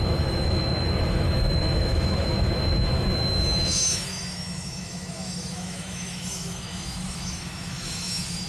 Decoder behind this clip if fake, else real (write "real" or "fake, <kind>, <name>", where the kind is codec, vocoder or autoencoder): fake, autoencoder, DAC-VAE